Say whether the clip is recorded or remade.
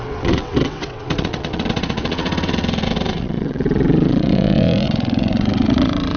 remade